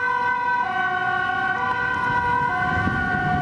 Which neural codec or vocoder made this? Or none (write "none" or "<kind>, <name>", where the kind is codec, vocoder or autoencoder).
none